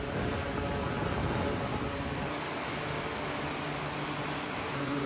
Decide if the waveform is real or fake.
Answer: real